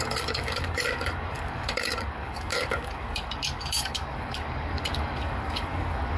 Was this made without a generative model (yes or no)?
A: no